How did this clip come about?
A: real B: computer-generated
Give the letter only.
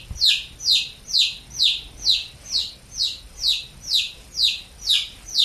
A